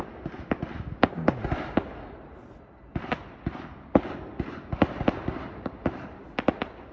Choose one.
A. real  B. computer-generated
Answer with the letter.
A